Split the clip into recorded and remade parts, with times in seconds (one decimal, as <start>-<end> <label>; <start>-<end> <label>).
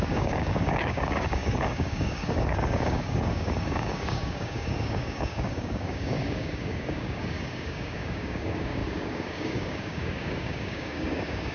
0.0-11.5 remade